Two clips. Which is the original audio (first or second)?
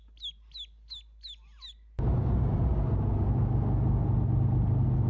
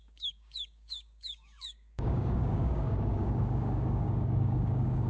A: first